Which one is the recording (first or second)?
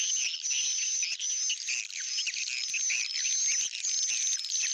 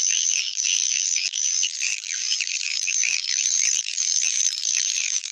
first